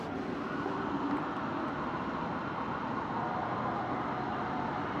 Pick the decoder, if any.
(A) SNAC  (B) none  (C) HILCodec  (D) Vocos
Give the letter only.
B